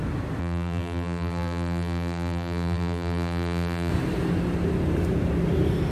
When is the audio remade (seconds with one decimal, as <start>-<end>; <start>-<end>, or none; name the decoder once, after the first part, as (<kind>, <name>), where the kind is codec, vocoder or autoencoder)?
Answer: 0.4-3.9 (vocoder, BigVGAN v2)